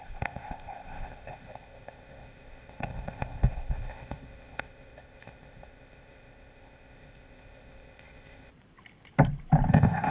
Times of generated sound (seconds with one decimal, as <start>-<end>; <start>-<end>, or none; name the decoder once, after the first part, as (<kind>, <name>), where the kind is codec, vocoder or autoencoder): 0.0-8.5 (codec, ZipCodec); 9.7-10.1